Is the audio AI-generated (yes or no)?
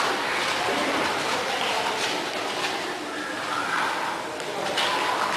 no